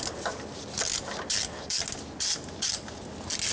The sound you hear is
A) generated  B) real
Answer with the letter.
B